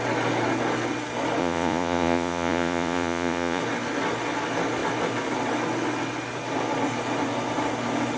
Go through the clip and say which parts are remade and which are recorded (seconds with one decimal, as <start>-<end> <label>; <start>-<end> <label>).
0.0-1.4 recorded; 1.4-3.6 remade; 3.6-8.2 recorded